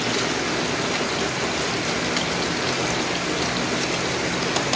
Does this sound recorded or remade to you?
recorded